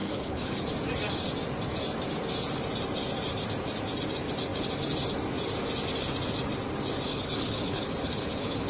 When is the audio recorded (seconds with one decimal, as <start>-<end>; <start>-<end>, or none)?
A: 0.7-7.1